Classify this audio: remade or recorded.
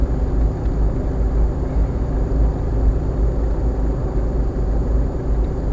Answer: recorded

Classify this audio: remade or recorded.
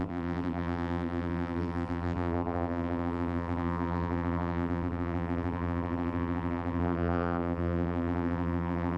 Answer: remade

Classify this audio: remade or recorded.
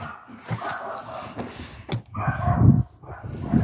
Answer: recorded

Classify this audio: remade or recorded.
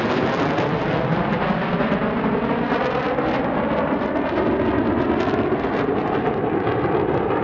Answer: recorded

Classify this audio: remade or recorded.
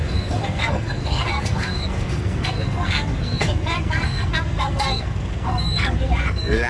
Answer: remade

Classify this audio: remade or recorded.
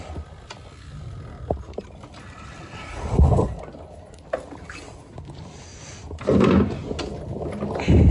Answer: recorded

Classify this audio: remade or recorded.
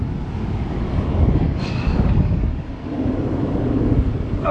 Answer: remade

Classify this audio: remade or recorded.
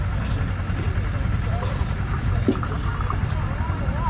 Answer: recorded